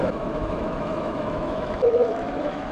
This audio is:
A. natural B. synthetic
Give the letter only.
B